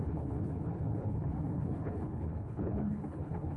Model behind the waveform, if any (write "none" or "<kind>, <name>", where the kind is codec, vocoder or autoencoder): codec, HILCodec